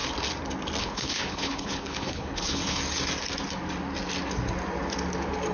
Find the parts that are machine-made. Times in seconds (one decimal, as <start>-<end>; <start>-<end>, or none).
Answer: 0.8-2.8